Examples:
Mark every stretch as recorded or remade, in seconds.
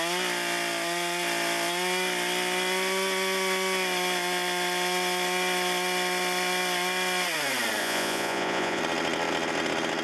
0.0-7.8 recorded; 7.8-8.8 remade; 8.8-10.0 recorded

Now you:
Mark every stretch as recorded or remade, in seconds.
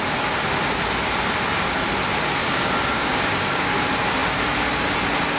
0.0-2.4 recorded; 2.4-3.7 remade; 3.7-5.4 recorded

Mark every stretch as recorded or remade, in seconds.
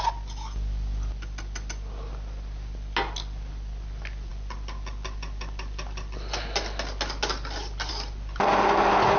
0.0-9.2 recorded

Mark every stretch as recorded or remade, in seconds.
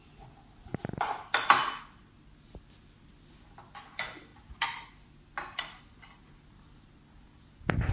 0.0-4.3 recorded; 4.3-7.0 remade; 7.0-7.9 recorded